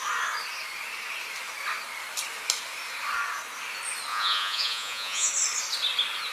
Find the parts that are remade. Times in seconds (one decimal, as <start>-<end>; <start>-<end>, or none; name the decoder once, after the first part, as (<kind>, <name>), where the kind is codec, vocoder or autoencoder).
4.1-5.3 (vocoder, Vocos)

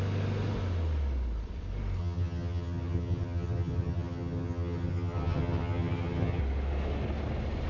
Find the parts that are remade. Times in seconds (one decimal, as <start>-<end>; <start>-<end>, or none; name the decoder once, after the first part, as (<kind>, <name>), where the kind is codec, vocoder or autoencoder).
2.0-6.4 (vocoder, HiFi-GAN)

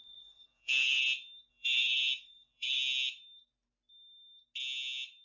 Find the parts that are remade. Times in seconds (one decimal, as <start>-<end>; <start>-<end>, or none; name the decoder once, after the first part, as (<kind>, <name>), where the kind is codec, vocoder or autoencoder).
0.0-1.0 (codec, DAC); 1.5-2.8

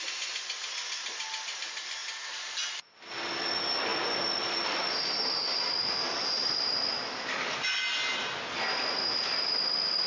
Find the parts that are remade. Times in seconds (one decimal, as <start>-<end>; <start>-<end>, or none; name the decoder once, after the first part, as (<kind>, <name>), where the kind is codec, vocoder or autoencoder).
none

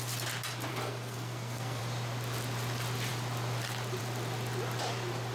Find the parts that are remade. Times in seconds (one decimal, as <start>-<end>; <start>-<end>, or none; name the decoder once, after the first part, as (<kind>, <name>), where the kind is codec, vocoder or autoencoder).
0.7-1.8 (codec, SNAC)

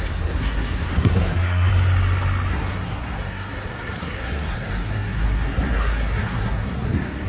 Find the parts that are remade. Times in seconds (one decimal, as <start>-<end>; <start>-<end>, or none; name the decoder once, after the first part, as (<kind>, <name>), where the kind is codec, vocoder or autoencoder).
0.0-1.7 (codec, SNAC); 2.5-7.3

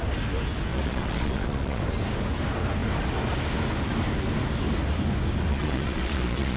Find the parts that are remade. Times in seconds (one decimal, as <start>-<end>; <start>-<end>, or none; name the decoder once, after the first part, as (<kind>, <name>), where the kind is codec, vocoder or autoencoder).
0.7-1.8 (vocoder, Vocos); 5.5-6.6

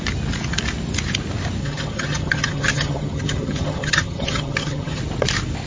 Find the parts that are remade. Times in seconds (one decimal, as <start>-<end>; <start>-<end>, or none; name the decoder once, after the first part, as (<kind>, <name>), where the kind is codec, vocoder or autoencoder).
1.6-5.0 (vocoder, HiFi-GAN)